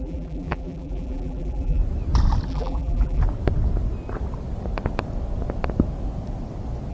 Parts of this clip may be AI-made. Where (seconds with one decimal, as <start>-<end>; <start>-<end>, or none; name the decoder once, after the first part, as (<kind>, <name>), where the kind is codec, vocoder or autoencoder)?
0.0-1.8 (vocoder, BigVGAN v2); 2.5-3.2